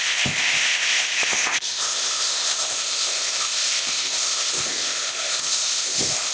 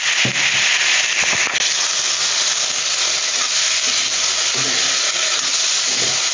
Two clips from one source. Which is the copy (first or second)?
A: first